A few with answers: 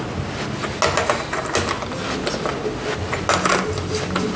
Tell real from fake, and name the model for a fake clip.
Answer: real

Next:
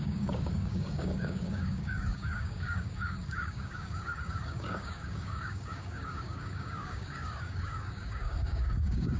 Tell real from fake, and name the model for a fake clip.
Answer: fake, codec, DAC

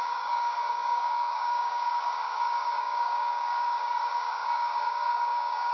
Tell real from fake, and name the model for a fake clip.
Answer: fake, codec, DAC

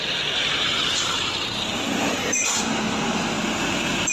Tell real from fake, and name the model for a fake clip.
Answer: real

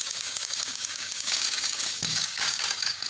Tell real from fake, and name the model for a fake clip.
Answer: fake, codec, DAC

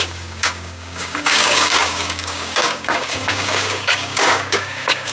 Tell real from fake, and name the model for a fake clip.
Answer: fake, codec, DAC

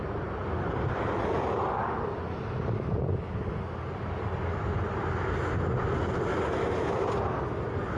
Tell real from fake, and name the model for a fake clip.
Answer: real